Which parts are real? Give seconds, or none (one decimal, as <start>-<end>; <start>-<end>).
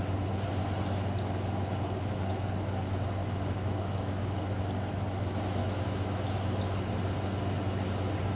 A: 0.0-3.2; 4.6-5.6; 6.6-8.4